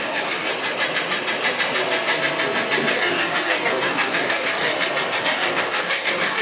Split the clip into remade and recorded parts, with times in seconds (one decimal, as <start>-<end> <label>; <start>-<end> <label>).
0.0-0.5 remade; 0.5-2.9 recorded; 2.9-4.7 remade; 4.7-5.2 recorded; 5.2-6.4 remade